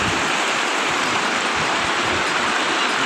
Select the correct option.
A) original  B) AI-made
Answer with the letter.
A